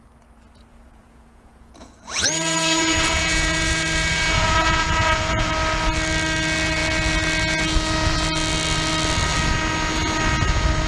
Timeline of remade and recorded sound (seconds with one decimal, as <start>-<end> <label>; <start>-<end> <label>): 0.0-0.7 recorded; 0.7-5.5 remade; 5.5-10.9 recorded